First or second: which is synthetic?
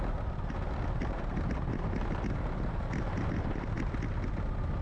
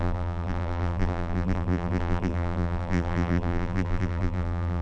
second